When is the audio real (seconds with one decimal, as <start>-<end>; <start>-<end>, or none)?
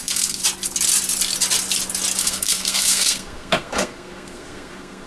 0.4-2.2